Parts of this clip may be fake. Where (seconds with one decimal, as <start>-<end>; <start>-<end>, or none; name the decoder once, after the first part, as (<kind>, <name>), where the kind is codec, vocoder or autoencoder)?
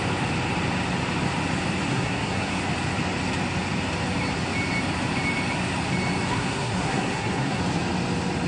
1.9-2.6 (codec, SNAC); 6.3-7.6